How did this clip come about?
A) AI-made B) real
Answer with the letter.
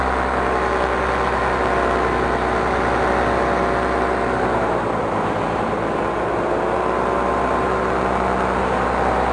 B